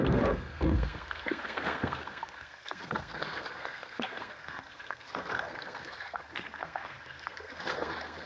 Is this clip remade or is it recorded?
remade